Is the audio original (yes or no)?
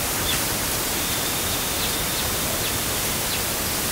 no